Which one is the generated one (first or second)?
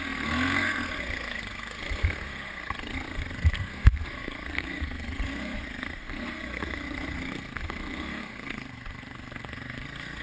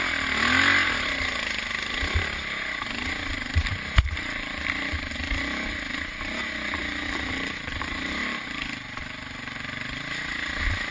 first